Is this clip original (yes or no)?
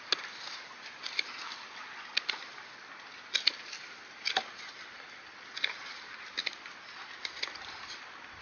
yes